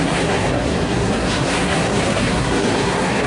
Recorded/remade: remade